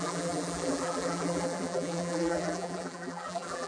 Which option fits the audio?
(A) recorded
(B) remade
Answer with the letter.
B